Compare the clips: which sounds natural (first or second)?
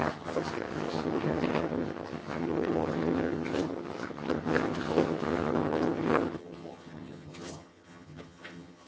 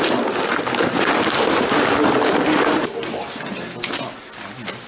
second